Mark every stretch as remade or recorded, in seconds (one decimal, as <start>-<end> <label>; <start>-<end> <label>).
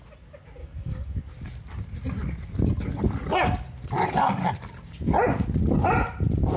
0.0-0.6 recorded; 0.6-1.2 remade; 1.2-6.6 recorded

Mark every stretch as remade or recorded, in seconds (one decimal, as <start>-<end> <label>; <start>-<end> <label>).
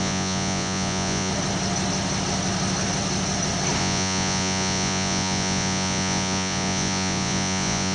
0.0-1.3 remade; 1.3-3.8 recorded; 3.8-7.9 remade